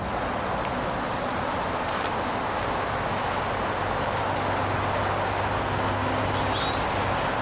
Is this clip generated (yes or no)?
no